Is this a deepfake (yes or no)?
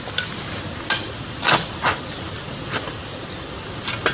no